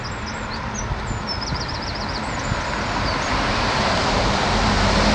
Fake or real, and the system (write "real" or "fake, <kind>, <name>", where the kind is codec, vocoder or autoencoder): real